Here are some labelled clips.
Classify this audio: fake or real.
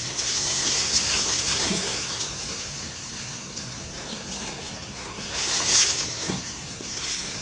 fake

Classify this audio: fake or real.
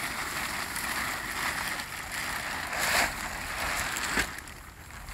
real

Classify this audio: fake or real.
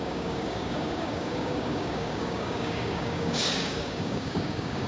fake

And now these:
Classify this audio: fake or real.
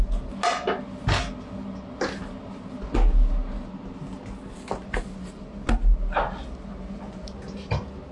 real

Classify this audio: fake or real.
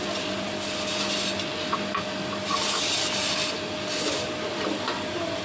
real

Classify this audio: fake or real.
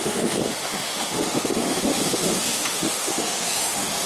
fake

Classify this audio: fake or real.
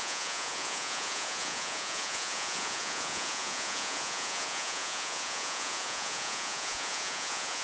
fake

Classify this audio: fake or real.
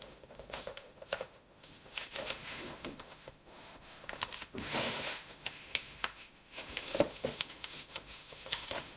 fake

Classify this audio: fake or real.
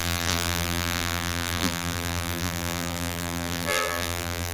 fake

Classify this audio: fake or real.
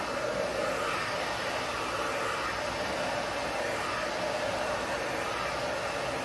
real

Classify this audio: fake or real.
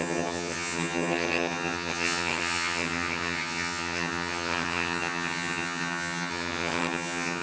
fake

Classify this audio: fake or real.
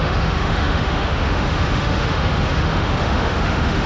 fake